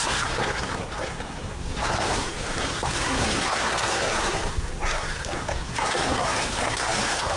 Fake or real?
fake